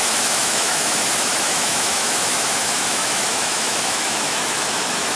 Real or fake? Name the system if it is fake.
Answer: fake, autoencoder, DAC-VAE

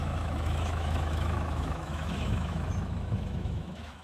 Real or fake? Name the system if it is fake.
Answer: fake, autoencoder, DAC-VAE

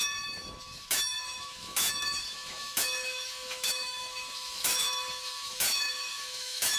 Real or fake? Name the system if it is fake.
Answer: fake, autoencoder, DAC-VAE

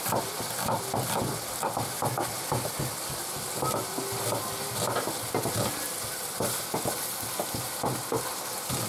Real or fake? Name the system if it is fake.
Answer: real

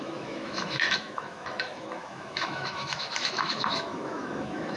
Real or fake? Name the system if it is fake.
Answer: fake, autoencoder, DAC-VAE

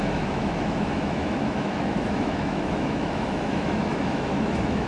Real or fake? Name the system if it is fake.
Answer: fake, autoencoder, DAC-VAE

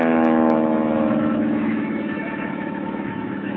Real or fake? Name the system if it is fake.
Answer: fake, autoencoder, DAC-VAE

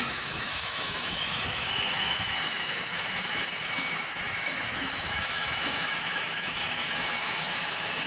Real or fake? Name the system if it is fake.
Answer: fake, autoencoder, DAC-VAE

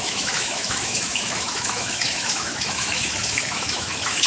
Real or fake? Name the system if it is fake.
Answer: fake, autoencoder, DAC-VAE